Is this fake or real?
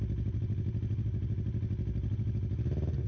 real